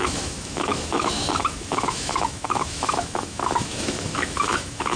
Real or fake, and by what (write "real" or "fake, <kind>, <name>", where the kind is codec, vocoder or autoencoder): fake, autoencoder, DAC-VAE